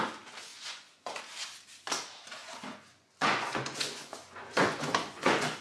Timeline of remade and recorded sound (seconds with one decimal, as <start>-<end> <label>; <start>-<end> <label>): 0.0-0.5 recorded; 0.5-1.2 remade; 1.2-2.4 recorded; 2.4-5.6 remade